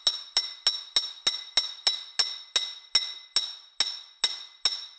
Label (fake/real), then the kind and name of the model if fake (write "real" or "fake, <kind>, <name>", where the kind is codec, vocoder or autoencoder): real